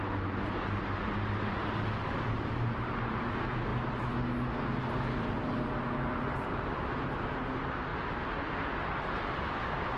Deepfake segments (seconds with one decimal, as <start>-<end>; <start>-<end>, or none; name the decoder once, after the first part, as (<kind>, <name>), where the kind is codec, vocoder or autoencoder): 0.0-3.7 (vocoder, BigVGAN v2); 5.2-7.9; 9.3-10.0